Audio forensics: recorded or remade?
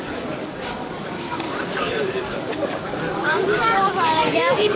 remade